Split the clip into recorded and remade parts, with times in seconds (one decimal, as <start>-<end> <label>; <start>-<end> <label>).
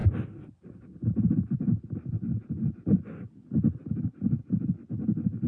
0.0-5.5 recorded